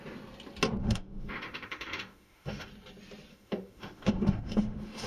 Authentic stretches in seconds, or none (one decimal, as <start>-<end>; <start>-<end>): 0.0-0.8; 2.7-3.3